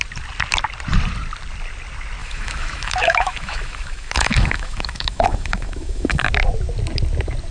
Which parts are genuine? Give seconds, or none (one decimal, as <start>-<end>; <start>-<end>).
0.0-2.2; 6.3-7.5